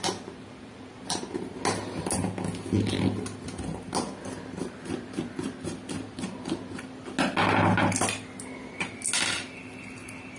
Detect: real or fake real